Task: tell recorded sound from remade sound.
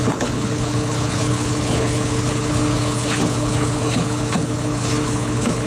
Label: remade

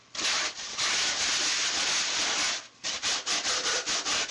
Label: recorded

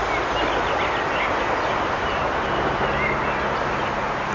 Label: recorded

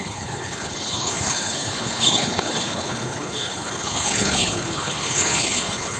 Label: remade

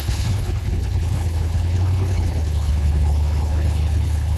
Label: remade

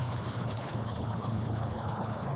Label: remade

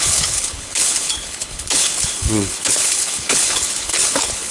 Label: remade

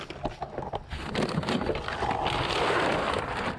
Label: recorded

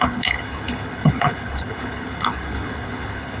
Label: remade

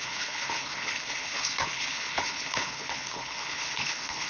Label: remade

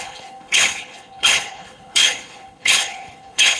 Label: remade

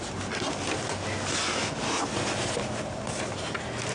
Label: recorded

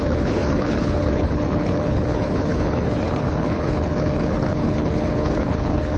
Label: remade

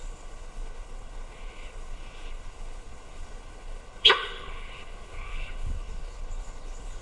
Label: remade